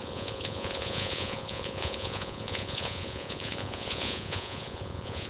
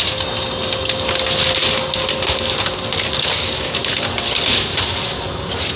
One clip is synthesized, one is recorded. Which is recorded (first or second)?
second